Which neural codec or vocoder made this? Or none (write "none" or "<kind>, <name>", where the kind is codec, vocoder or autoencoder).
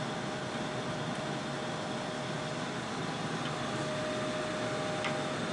none